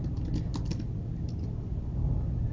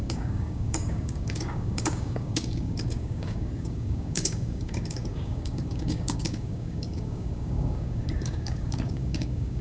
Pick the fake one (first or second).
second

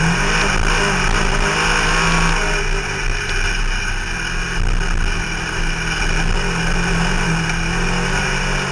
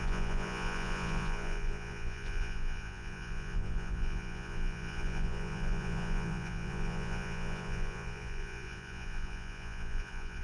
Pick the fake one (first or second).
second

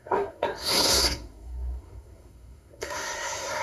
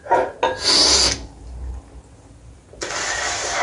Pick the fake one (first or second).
first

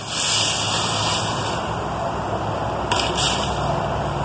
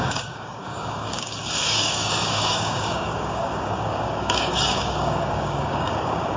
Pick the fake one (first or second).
second